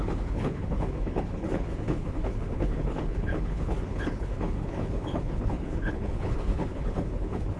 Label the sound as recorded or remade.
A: remade